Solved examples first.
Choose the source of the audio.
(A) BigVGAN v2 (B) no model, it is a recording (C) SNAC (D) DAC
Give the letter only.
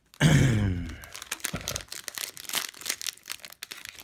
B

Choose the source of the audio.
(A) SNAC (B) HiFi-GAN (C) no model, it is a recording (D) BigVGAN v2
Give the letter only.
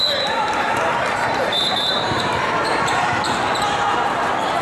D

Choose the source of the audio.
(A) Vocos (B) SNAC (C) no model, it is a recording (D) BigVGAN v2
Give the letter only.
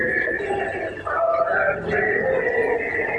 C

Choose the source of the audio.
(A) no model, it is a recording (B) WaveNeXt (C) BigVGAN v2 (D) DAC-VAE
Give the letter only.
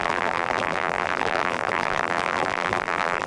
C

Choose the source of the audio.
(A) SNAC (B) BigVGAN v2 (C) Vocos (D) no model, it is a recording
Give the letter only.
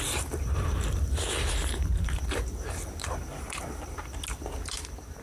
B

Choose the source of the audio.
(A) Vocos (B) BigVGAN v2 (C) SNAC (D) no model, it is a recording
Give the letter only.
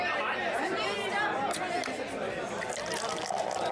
D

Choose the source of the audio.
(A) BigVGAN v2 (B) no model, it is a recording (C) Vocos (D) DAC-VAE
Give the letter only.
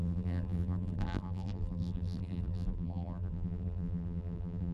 A